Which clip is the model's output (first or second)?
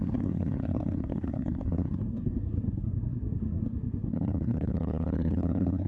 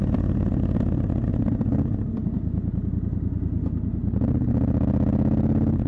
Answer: first